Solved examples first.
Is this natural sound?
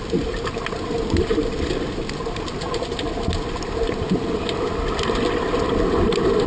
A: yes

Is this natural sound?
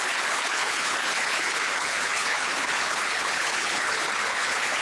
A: no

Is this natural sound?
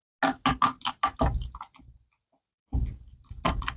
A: yes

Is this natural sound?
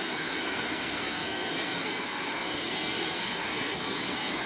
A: no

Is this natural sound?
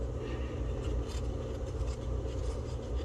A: yes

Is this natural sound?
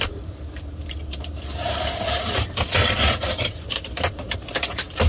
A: no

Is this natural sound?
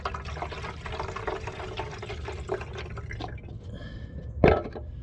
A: yes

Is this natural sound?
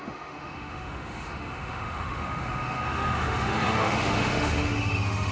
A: no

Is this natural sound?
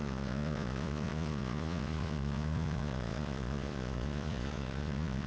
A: no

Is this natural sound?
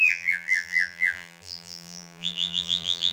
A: no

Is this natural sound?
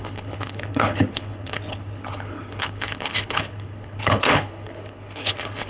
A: no